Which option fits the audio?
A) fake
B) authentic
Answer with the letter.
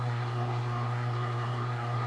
A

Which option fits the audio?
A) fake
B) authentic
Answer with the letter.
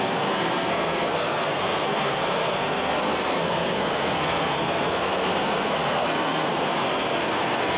A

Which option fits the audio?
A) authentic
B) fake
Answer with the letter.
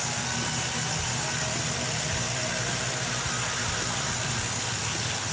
A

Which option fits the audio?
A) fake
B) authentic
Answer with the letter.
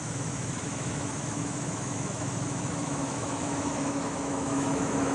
A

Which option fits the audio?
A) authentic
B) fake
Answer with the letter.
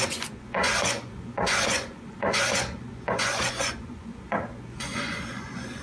B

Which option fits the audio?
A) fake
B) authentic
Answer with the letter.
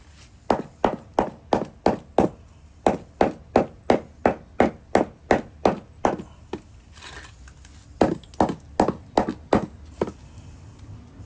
B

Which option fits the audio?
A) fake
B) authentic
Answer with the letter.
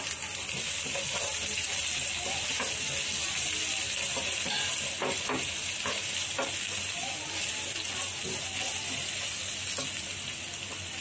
B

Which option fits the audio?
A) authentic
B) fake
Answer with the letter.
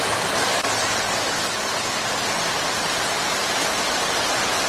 A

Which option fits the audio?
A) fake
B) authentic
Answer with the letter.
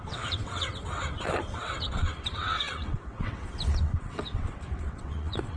A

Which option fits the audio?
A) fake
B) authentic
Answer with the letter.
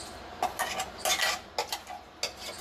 B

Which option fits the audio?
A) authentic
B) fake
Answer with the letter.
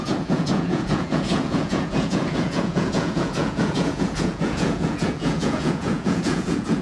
B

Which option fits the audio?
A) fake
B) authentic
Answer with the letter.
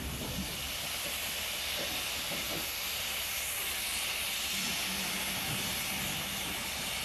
B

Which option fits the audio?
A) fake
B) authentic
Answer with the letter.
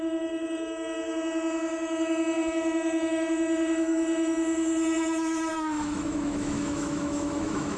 A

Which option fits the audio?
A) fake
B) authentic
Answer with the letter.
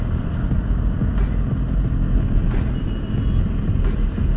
B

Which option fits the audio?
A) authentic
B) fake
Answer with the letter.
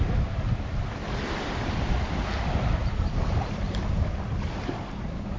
A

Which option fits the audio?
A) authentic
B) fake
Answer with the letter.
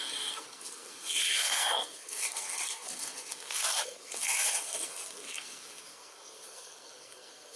B